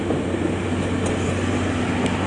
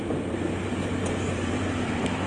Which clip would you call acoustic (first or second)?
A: first